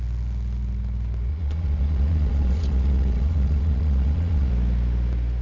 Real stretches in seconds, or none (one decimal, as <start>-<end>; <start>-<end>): 0.0-1.3; 4.5-5.4